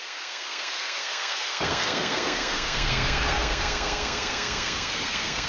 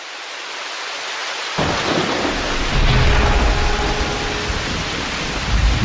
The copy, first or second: first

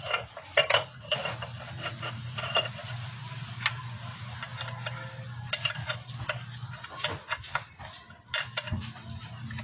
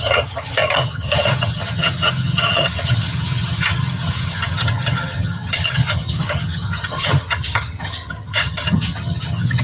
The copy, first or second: second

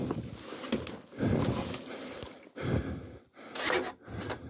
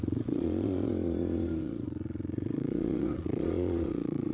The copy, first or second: second